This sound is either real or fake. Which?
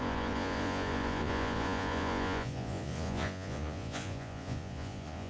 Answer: fake